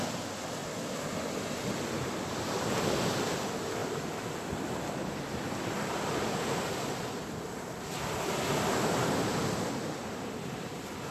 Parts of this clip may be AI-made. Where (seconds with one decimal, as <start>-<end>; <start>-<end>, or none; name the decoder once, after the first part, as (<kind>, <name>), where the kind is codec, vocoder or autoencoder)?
0.6-2.8 (vocoder, BigVGAN v2); 9.4-10.4